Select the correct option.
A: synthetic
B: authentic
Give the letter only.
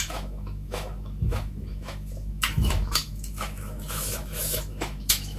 A